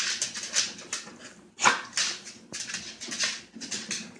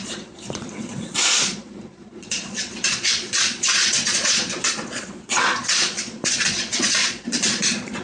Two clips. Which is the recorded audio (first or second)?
first